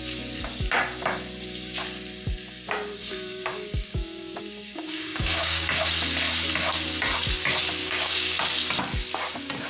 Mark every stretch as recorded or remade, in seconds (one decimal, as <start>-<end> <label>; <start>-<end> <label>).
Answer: 0.0-3.0 recorded; 3.0-5.9 remade; 5.9-7.8 recorded; 7.8-8.4 remade; 8.4-9.7 recorded